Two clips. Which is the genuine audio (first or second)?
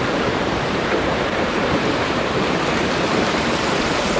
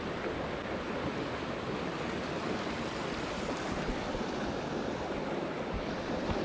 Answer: second